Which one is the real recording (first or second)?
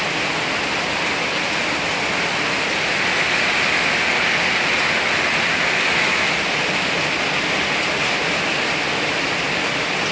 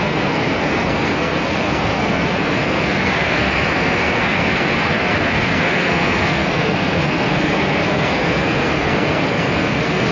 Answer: first